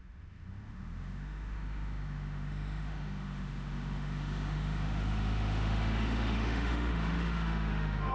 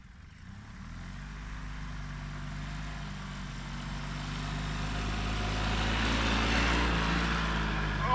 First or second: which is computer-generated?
first